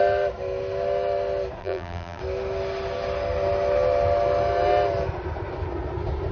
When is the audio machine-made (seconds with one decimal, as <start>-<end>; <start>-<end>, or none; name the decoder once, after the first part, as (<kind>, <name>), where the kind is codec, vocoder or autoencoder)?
1.6-2.2 (vocoder, BigVGAN v2)

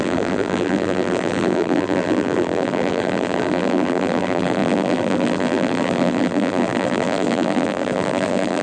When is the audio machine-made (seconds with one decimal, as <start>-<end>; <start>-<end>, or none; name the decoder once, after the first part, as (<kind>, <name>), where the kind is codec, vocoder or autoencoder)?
0.0-8.6 (vocoder, BigVGAN v2)

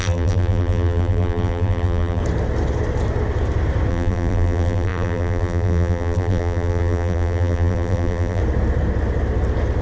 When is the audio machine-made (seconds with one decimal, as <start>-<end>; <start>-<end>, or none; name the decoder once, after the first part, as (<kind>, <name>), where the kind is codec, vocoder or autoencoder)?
0.0-2.2 (vocoder, BigVGAN v2); 3.9-8.4

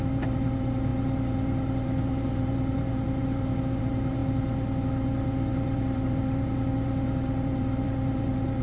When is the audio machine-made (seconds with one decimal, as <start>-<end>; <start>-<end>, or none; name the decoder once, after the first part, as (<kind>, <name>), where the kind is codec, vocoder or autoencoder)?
0.0-8.6 (vocoder, BigVGAN v2)

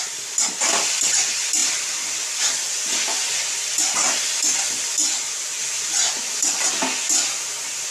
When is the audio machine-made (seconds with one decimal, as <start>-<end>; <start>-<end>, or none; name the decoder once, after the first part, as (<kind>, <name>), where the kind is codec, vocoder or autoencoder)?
none

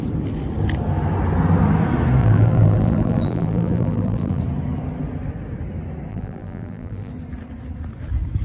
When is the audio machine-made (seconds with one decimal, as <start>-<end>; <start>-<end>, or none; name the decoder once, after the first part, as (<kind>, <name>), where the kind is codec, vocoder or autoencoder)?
2.2-4.4 (vocoder, BigVGAN v2); 6.1-7.1